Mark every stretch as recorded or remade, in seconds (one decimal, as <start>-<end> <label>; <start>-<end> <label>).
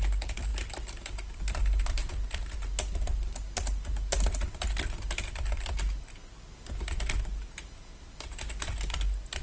0.0-9.4 recorded